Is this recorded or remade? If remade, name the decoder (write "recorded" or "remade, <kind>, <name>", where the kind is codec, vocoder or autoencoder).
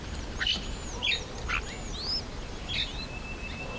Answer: recorded